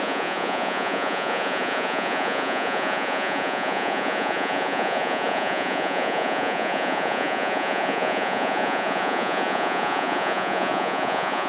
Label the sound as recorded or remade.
remade